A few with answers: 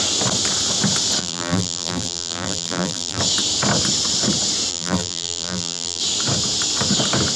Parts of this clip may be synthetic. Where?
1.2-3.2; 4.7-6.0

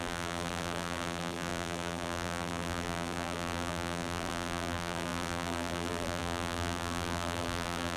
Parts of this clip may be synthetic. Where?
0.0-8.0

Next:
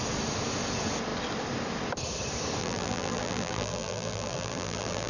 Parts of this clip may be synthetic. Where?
2.6-5.1

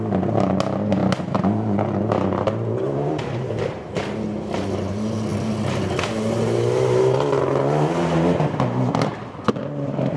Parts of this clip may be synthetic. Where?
9.1-10.2